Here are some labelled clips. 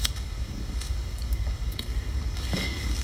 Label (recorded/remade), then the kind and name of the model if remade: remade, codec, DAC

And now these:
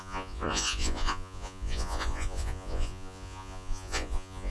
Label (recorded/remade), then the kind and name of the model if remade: remade, vocoder, Vocos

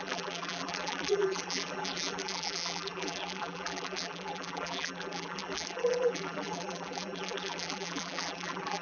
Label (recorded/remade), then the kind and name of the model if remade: remade, vocoder, BigVGAN v2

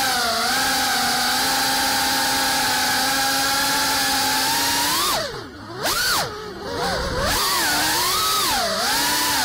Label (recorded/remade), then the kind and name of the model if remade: recorded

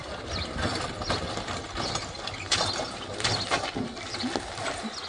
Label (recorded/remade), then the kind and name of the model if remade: recorded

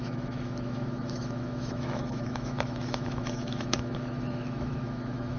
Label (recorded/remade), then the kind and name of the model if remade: remade, autoencoder, DAC-VAE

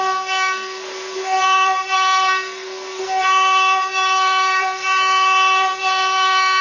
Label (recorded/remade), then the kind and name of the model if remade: remade, codec, SNAC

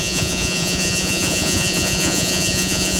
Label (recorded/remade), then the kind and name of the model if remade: remade, vocoder, Vocos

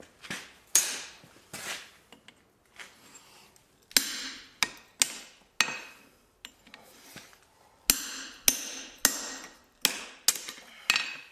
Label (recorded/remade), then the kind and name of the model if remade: recorded